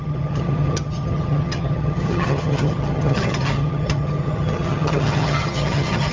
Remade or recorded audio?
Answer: remade